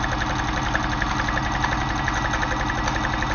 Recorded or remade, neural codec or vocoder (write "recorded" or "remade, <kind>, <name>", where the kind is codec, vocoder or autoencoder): recorded